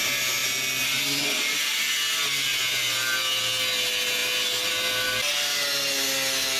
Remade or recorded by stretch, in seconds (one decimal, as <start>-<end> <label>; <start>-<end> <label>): 0.0-6.6 recorded